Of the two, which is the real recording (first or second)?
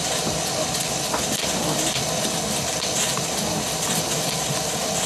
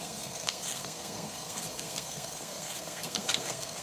first